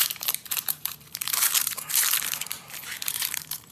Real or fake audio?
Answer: fake